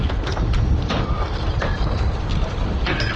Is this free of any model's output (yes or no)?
yes